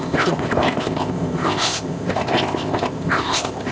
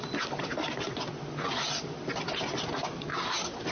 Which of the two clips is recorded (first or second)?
second